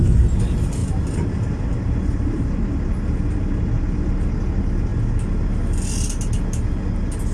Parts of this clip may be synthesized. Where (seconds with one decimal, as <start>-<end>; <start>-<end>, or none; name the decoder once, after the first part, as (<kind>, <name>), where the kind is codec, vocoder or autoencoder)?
none